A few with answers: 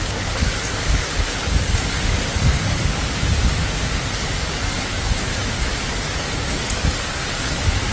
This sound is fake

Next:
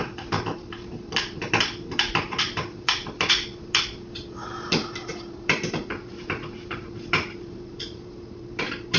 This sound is fake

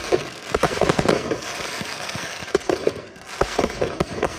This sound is fake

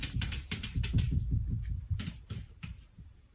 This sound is fake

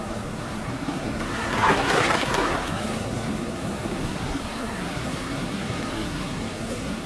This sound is fake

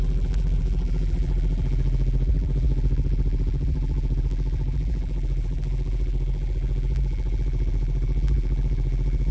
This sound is fake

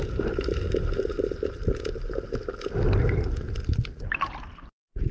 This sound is real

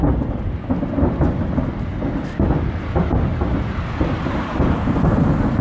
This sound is real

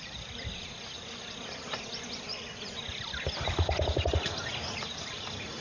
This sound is fake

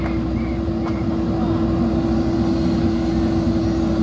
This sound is real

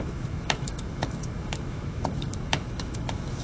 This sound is fake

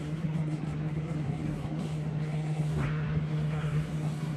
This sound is fake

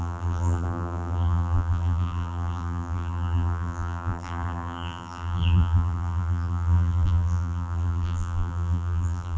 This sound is fake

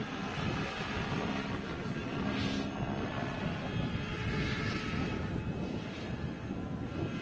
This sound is real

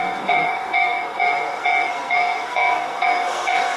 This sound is fake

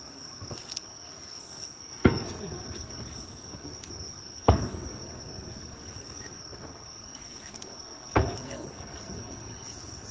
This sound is fake